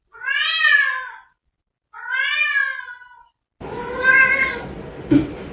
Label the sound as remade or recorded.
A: recorded